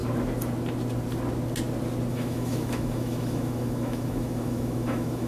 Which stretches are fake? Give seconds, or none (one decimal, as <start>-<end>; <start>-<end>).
2.1-5.3